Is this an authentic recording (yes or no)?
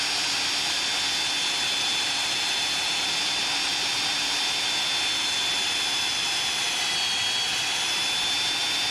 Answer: yes